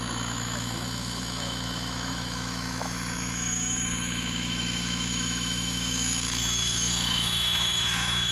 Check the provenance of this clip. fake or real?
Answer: fake